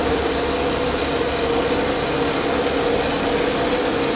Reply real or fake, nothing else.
real